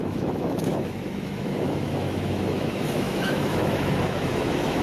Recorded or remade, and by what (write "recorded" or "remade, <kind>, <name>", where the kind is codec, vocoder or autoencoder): remade, autoencoder, DAC-VAE